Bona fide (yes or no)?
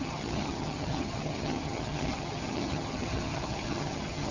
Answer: no